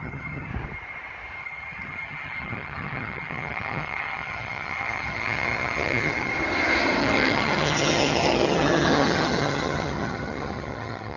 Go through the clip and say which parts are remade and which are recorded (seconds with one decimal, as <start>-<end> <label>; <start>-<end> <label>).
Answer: 0.0-0.5 remade; 0.5-1.4 recorded; 1.4-6.3 remade; 6.3-7.0 recorded; 7.0-11.2 remade